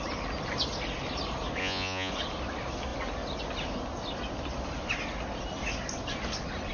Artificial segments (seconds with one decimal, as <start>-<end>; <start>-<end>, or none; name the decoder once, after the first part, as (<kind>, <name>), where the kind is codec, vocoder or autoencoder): 1.6-2.1 (vocoder, Vocos)